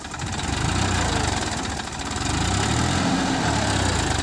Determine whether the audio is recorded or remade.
recorded